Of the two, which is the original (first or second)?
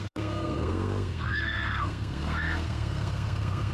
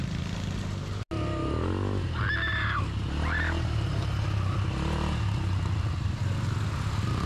second